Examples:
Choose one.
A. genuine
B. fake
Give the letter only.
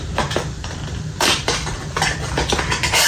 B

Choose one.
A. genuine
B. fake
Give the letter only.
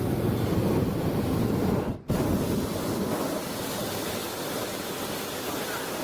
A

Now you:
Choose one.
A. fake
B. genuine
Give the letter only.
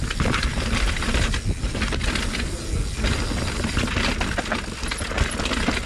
B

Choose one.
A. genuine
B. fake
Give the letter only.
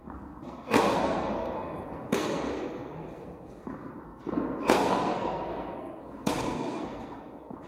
B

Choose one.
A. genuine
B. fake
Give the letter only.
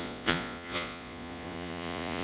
B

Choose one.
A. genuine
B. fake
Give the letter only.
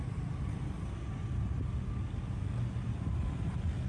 A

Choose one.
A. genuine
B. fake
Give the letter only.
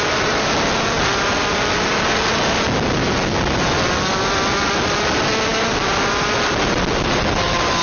A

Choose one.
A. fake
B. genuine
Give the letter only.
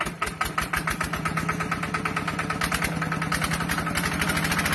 B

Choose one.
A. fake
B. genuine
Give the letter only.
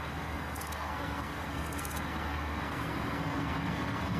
A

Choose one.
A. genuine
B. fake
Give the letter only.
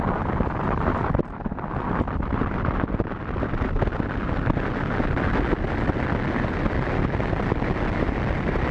A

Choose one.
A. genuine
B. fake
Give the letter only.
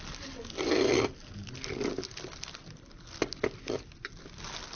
A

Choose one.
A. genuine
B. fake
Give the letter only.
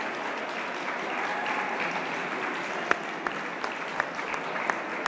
A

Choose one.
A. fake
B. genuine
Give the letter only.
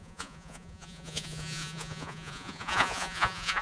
A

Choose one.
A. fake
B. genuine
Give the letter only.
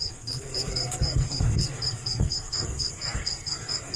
A